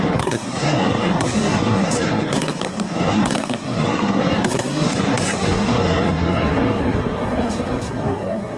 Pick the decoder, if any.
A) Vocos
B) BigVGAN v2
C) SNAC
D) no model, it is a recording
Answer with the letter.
C